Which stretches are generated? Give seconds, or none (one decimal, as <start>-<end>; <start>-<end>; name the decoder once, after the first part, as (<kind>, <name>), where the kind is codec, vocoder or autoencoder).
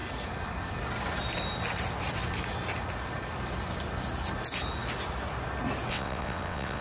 5.9-6.8 (vocoder, WaveNeXt)